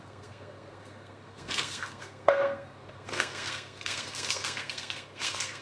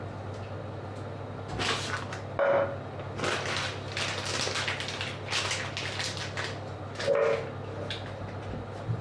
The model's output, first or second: first